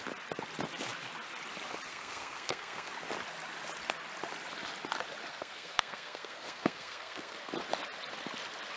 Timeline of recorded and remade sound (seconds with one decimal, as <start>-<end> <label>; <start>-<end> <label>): 0.0-1.9 recorded; 1.9-2.9 remade; 2.9-5.3 recorded; 5.3-7.5 remade; 7.5-8.8 recorded